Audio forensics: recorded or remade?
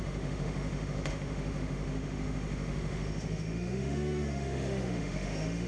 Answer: remade